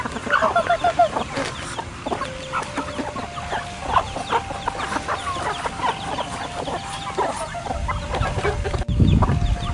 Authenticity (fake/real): real